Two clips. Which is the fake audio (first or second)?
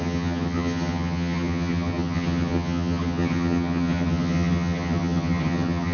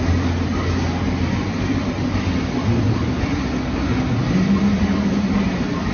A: first